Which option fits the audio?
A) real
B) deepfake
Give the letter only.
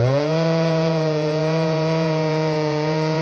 B